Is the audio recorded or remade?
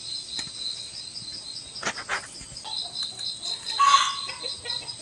recorded